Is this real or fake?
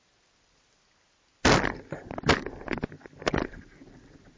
real